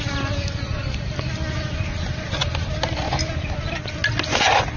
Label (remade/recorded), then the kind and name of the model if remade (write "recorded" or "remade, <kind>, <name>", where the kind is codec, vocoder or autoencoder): recorded